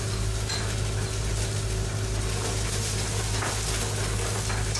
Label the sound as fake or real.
real